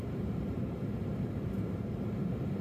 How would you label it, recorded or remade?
remade